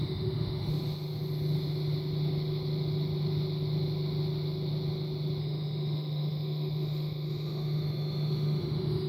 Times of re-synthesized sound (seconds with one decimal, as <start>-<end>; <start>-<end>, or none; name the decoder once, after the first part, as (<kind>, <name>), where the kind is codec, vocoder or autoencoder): 0.0-0.7 (autoencoder, DAC-VAE); 5.4-9.1